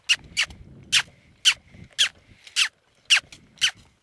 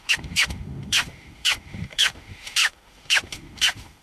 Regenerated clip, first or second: second